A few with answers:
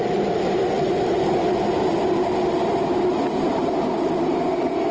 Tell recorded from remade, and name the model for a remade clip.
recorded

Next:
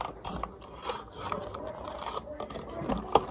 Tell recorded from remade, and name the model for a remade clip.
recorded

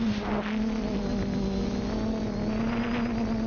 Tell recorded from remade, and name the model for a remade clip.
recorded